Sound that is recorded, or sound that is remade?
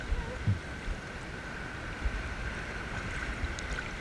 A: remade